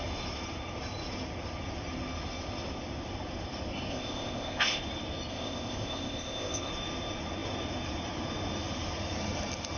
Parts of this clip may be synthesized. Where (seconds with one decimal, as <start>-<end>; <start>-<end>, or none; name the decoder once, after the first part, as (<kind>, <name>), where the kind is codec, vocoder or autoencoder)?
3.9-4.8 (codec, ZipCodec); 5.3-6.7